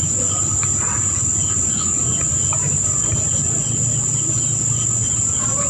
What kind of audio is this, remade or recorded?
recorded